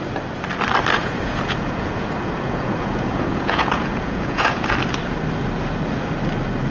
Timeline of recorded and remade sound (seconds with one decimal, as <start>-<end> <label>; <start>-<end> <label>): 0.0-0.9 recorded; 0.9-4.7 remade; 4.7-6.7 recorded